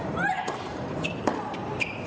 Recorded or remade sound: remade